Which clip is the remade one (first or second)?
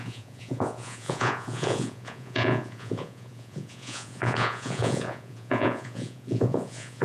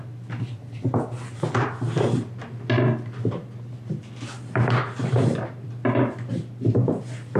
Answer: first